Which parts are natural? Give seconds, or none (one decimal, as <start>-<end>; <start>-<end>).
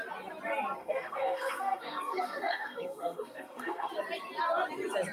0.0-0.8; 3.9-5.1